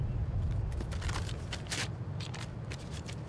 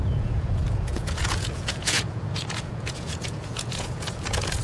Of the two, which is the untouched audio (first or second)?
first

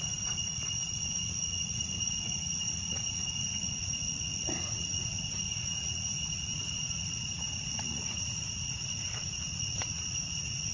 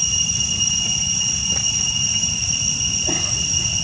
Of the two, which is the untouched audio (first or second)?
second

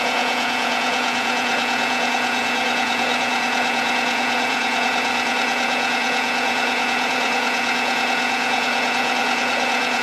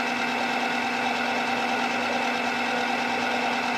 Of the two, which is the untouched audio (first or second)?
second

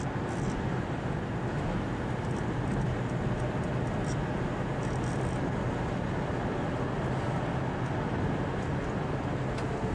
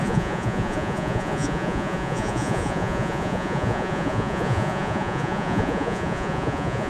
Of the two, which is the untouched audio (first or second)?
first